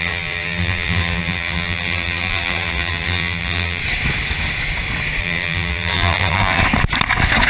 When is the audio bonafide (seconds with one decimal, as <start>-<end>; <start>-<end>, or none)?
3.8-5.2; 6.6-7.5